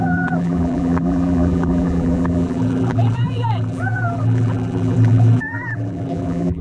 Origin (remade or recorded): remade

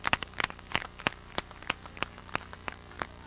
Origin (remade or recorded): remade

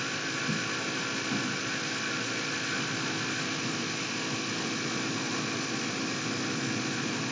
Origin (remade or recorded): recorded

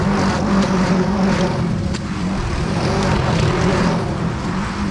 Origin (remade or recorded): recorded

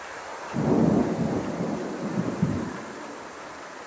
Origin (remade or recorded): recorded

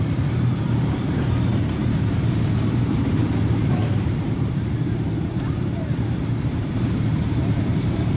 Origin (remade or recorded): remade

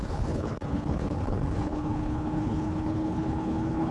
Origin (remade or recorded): remade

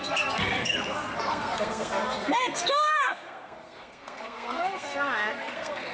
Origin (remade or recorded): remade